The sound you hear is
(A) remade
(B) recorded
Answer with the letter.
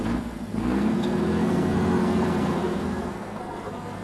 A